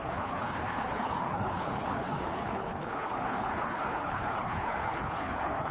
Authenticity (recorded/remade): remade